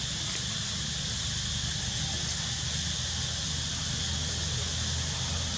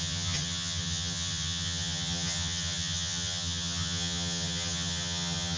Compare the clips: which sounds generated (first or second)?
second